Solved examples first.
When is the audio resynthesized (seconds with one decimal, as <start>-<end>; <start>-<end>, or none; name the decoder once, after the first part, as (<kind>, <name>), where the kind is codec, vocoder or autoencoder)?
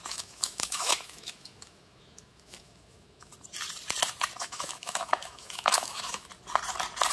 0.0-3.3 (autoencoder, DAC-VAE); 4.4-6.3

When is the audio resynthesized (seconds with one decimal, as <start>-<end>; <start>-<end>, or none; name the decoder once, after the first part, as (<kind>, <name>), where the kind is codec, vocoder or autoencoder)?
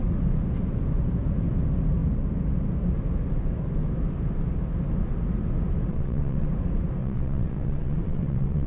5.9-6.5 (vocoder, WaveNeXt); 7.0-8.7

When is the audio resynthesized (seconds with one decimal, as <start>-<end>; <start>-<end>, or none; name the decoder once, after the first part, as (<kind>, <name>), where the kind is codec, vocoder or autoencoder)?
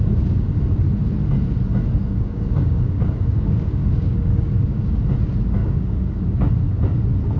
2.0-5.0 (codec, DAC); 5.6-6.5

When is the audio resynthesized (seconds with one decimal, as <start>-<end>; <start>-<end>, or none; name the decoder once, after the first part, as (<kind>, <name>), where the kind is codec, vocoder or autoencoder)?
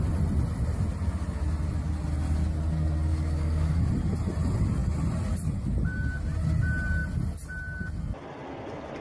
3.1-3.8 (codec, DAC)